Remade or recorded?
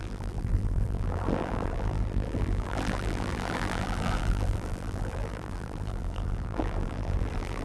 remade